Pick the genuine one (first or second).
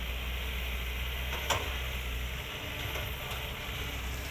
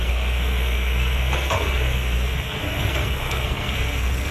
first